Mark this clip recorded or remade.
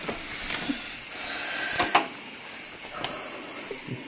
recorded